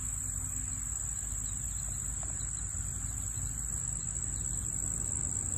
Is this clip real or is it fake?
real